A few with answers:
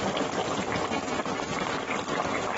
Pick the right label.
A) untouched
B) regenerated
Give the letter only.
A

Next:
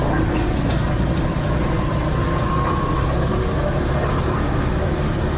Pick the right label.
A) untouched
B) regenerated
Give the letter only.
A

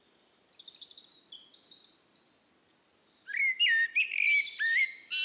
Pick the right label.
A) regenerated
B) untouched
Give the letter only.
B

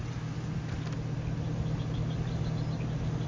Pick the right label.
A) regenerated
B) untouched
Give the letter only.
B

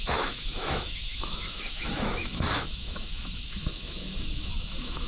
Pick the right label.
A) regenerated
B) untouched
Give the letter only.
A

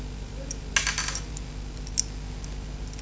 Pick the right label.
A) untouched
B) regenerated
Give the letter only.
A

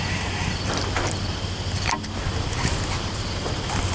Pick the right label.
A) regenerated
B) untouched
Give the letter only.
B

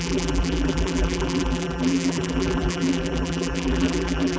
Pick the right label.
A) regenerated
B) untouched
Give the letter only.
A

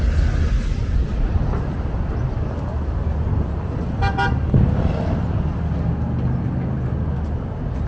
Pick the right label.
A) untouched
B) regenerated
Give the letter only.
A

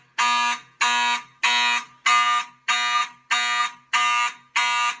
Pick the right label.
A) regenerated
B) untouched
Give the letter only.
B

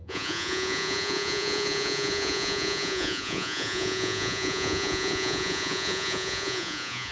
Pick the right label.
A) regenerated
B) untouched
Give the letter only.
A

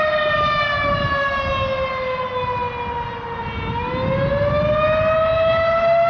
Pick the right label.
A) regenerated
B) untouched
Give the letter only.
B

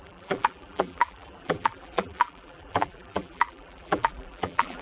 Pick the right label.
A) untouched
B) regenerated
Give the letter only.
B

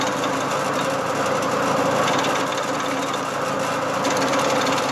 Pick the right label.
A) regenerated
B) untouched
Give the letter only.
B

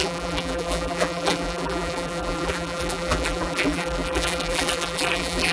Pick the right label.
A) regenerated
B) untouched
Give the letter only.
A